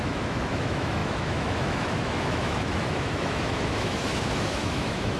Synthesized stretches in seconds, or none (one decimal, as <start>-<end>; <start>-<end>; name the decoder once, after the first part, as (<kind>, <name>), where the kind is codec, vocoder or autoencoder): 0.0-5.2 (autoencoder, DAC-VAE)